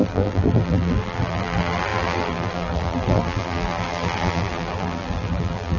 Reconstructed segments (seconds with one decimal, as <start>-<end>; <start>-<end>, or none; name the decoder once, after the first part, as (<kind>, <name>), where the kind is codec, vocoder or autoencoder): 0.0-5.8 (vocoder, BigVGAN v2)